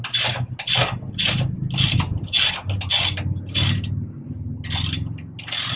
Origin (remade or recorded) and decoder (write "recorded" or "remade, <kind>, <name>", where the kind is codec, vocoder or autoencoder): recorded